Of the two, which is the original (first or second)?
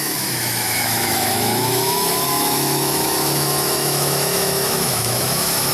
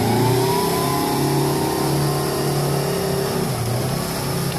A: second